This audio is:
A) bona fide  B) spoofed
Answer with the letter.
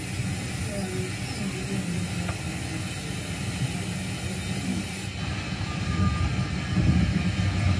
A